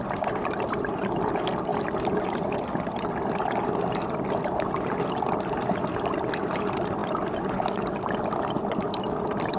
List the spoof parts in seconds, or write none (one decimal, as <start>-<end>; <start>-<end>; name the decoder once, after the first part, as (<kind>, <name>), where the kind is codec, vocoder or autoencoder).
none